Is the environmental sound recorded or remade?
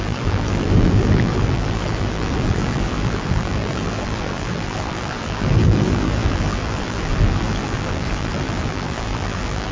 remade